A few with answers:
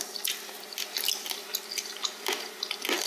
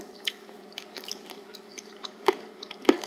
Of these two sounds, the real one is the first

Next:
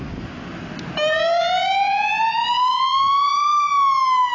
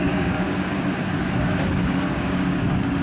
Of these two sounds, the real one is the first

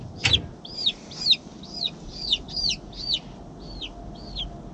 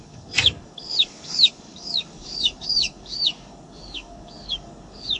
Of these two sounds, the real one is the first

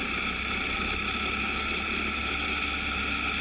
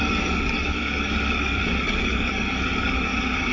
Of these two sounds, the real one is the first